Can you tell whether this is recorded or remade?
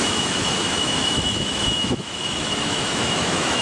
remade